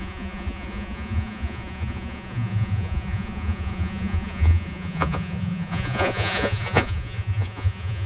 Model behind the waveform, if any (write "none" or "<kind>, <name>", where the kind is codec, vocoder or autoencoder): vocoder, Vocos